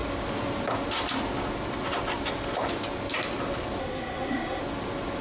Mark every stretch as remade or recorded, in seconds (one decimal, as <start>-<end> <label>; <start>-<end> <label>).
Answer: 0.0-3.8 recorded; 3.8-4.6 remade; 4.6-5.2 recorded